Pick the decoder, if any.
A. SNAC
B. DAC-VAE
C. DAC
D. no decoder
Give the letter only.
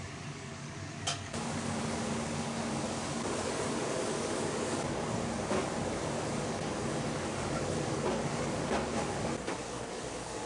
C